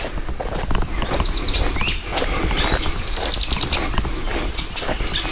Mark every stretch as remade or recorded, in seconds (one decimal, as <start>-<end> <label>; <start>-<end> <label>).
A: 0.0-5.3 recorded